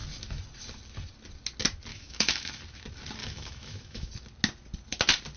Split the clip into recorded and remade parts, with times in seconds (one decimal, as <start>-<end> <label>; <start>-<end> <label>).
0.0-1.9 recorded; 1.9-2.6 remade; 2.6-3.2 recorded; 3.2-4.1 remade; 4.1-5.4 recorded